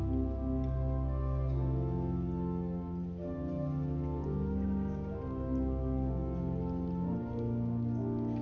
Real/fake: real